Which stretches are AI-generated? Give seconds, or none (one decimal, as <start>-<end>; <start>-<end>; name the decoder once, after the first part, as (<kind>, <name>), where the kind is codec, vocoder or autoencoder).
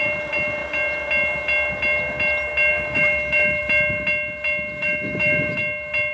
2.7-3.6 (autoencoder, DAC-VAE); 4.8-5.6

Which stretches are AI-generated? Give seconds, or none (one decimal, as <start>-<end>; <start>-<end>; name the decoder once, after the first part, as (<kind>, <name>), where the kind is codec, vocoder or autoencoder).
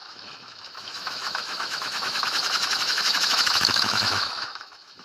0.0-5.0 (autoencoder, DAC-VAE)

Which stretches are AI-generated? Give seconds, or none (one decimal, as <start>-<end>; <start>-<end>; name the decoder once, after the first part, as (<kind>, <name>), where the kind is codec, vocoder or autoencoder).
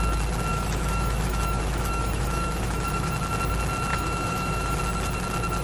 0.5-3.1 (autoencoder, DAC-VAE); 3.9-4.8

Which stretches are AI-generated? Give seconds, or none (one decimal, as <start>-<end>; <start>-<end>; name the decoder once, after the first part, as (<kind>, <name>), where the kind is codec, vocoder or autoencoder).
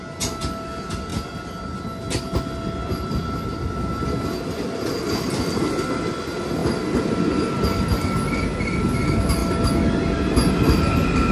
none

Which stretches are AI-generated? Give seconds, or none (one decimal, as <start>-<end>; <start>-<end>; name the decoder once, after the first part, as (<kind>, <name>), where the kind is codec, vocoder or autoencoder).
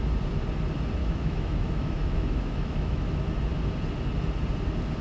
1.0-3.0 (autoencoder, DAC-VAE)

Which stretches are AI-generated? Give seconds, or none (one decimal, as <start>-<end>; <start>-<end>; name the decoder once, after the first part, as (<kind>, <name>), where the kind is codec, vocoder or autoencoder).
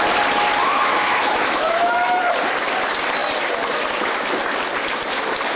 0.6-2.2 (autoencoder, DAC-VAE)